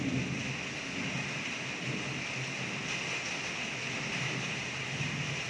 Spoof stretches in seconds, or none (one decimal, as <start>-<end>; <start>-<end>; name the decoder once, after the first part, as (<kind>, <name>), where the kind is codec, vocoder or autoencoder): none

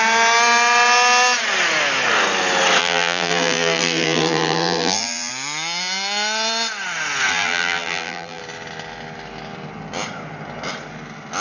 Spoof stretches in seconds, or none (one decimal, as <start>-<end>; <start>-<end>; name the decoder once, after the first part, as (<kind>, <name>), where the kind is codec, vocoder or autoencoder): 2.8-5.3 (vocoder, BigVGAN v2); 7.3-8.4

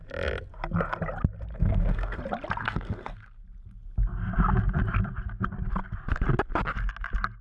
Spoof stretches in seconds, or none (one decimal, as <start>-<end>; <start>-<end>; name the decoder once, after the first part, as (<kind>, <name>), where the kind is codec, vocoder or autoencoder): 1.5-2.2 (codec, SNAC); 2.6-3.4

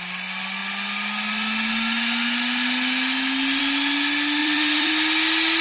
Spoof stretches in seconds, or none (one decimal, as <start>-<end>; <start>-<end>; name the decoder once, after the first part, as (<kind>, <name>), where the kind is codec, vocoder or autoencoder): 4.4-4.9 (vocoder, BigVGAN v2)

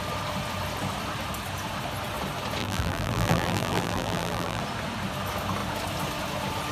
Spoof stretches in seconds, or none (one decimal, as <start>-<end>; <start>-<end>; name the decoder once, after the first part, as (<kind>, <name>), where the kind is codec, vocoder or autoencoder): 2.6-4.6 (vocoder, BigVGAN v2)

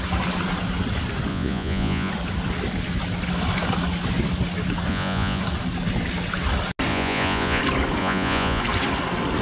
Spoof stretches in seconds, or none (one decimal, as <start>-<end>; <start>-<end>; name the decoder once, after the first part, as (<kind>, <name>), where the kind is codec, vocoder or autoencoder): 1.3-2.1 (vocoder, Vocos); 4.9-5.4; 6.9-7.6; 8.0-8.6

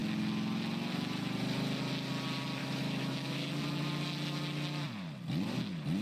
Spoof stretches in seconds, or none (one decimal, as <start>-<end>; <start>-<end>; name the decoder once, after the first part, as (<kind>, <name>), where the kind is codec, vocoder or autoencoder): 2.6-3.5 (autoencoder, DAC-VAE)